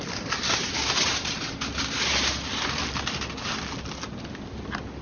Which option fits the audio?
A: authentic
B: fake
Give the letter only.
A